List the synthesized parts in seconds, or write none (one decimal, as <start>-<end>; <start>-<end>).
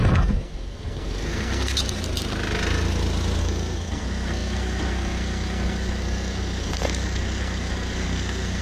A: 0.0-1.8; 3.4-8.6